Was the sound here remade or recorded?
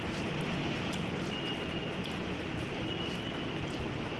recorded